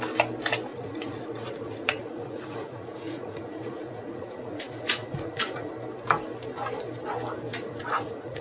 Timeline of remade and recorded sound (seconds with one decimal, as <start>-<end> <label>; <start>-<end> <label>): 0.0-0.7 recorded; 0.7-5.7 remade; 5.7-7.5 recorded; 7.5-8.4 remade